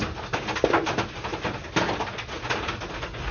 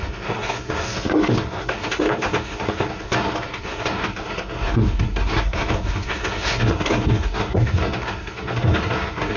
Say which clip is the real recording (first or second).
first